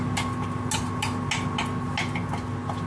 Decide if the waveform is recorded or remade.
recorded